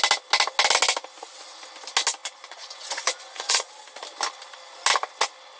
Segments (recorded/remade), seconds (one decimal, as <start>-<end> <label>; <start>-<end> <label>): 0.0-2.2 recorded; 2.2-3.7 remade; 3.7-5.6 recorded